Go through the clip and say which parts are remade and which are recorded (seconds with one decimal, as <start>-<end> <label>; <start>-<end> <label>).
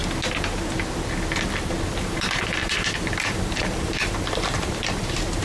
0.0-1.9 recorded; 1.9-5.4 remade